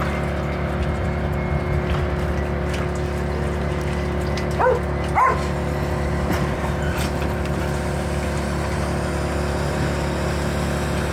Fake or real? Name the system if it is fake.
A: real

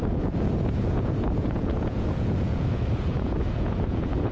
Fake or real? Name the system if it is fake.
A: fake, vocoder, Vocos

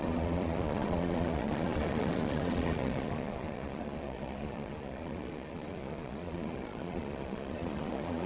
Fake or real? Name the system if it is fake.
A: fake, vocoder, Vocos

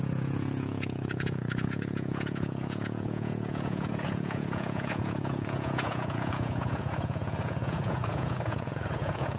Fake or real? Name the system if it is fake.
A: fake, vocoder, Vocos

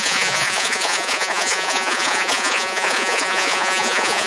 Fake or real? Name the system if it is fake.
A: fake, vocoder, Vocos